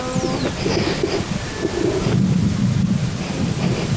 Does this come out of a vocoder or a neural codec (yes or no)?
no